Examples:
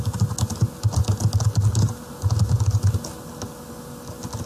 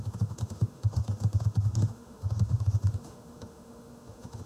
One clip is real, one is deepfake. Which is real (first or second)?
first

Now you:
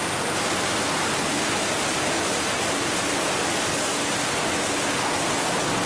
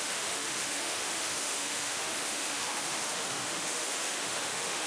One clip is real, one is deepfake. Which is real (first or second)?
first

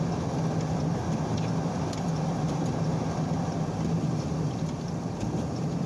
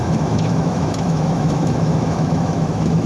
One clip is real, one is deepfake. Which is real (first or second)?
first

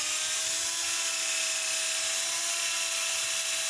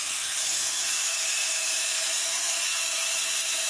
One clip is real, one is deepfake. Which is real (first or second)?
first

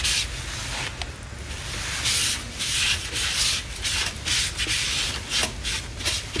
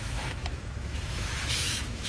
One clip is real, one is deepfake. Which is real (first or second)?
first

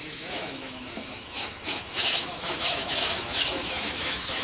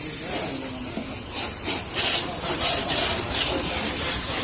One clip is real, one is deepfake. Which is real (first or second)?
second